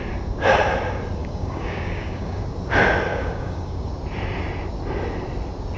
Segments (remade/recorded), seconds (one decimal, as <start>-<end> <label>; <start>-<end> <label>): 0.0-1.2 recorded; 1.2-2.4 remade; 2.4-3.1 recorded; 3.1-3.9 remade; 3.9-5.8 recorded